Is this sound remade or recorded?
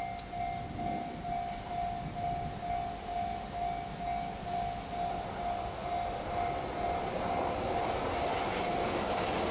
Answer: recorded